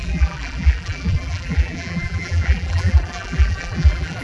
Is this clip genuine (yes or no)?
no